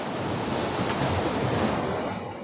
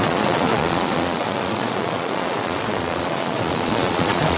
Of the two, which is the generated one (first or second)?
second